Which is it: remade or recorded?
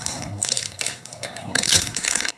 remade